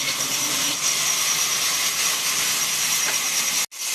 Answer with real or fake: real